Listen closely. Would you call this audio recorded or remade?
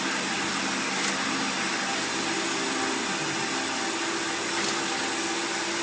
recorded